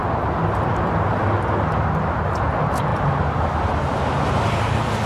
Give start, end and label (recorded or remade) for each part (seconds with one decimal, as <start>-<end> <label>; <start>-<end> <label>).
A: 0.0-5.1 recorded